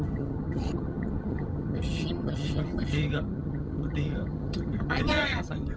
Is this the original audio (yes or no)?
no